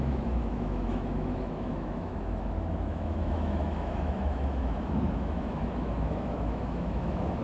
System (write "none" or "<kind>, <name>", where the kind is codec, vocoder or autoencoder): autoencoder, DAC-VAE